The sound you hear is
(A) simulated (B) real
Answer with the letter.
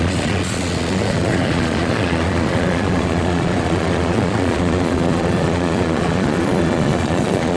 A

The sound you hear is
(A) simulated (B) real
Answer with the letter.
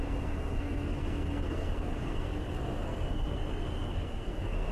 A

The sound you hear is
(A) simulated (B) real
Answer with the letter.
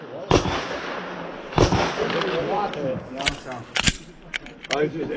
B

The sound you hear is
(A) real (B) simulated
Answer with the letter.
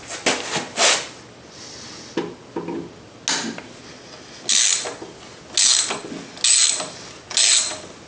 A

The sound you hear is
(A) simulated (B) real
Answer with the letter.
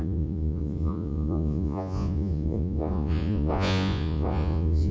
A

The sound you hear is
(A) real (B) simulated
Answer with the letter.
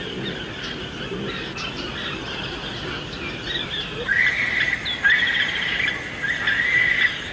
A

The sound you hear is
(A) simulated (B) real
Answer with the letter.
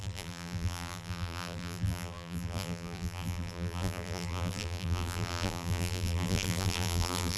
A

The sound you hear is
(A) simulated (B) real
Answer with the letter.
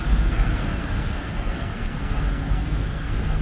A